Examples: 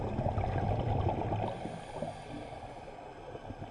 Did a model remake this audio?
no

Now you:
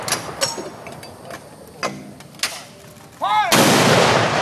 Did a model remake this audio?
no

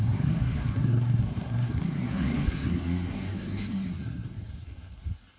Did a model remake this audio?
yes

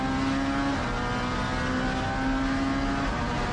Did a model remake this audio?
no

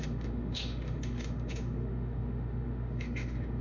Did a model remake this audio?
yes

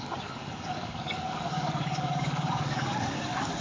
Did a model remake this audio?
yes